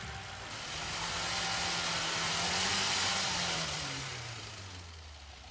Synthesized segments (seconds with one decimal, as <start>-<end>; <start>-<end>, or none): 2.7-4.5